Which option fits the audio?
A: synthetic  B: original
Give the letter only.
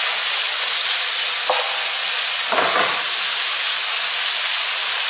B